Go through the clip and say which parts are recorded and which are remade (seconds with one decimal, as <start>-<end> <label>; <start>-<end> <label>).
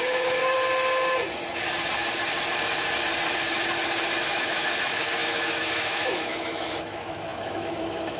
0.0-0.4 remade; 0.4-4.2 recorded; 4.2-8.2 remade